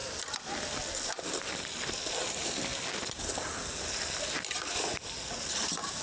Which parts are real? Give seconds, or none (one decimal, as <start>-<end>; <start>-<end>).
0.0-6.0